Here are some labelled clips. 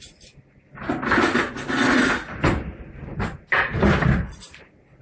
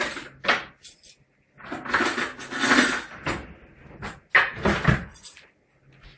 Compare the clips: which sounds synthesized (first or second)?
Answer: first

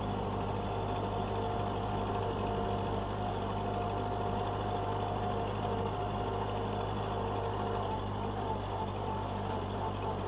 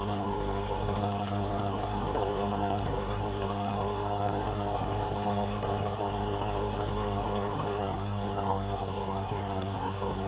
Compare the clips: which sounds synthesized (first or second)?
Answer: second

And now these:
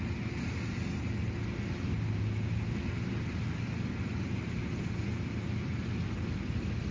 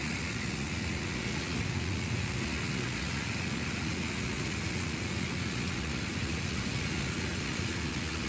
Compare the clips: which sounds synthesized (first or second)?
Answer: second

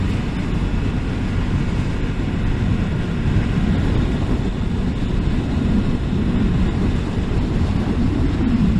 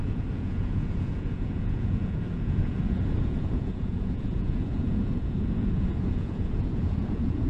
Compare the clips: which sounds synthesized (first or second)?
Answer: second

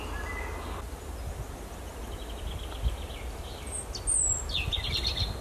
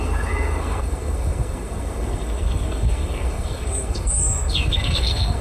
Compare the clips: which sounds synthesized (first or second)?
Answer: second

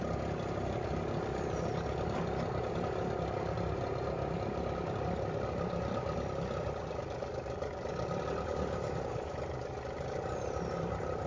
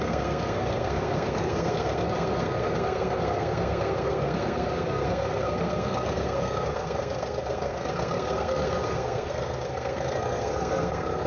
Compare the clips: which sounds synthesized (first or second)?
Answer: second